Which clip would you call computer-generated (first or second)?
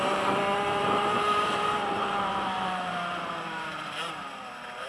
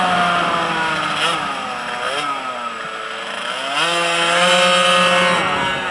first